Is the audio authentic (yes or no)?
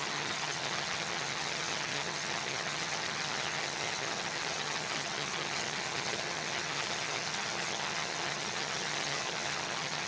no